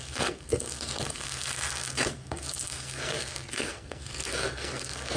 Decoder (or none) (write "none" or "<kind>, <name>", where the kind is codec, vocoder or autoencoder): codec, SNAC